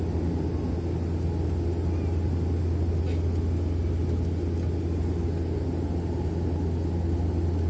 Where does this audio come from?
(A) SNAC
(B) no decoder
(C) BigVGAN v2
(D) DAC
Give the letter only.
B